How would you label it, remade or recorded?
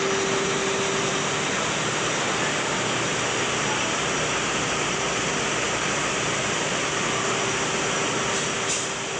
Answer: recorded